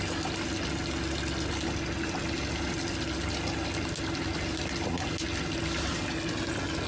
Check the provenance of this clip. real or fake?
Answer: real